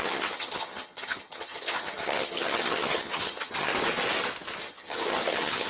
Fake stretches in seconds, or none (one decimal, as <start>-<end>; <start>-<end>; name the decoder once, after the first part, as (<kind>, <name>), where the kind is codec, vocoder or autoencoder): 0.0-3.7 (vocoder, HiFi-GAN); 4.6-5.7